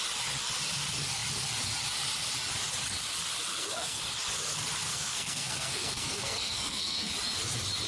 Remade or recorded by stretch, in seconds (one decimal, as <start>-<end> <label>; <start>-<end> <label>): 0.0-3.5 recorded; 3.5-4.0 remade; 4.0-4.9 recorded; 4.9-7.1 remade; 7.1-7.9 recorded